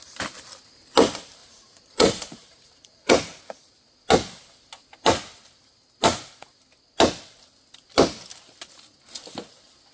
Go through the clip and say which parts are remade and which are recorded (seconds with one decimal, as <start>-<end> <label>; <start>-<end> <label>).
0.0-1.4 recorded; 1.4-3.4 remade; 3.4-9.9 recorded